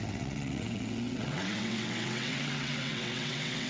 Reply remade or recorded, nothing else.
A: remade